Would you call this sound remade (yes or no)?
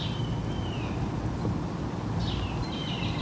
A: no